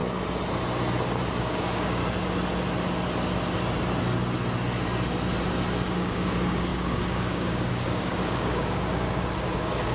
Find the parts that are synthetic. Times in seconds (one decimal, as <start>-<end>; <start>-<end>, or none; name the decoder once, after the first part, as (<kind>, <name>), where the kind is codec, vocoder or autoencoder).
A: 1.4-2.0 (codec, DAC); 5.9-9.9